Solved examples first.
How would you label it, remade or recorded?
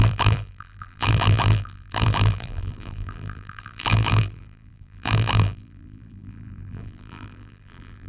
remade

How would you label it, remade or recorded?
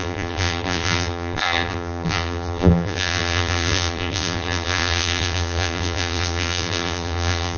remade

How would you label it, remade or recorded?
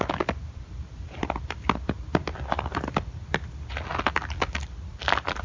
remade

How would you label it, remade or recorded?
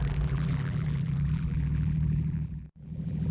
remade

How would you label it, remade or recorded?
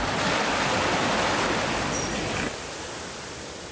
recorded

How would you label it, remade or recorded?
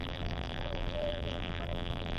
remade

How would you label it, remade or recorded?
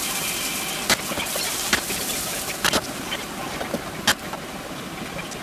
recorded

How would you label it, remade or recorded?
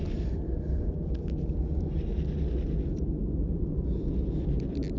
recorded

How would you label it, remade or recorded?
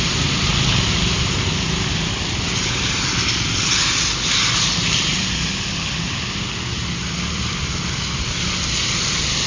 recorded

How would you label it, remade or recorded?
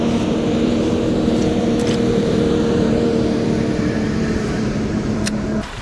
remade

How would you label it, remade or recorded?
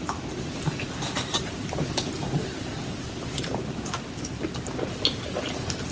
recorded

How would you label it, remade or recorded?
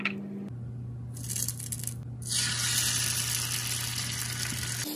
recorded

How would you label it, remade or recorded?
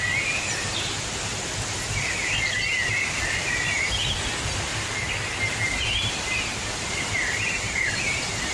recorded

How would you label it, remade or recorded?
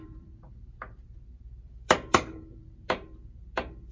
remade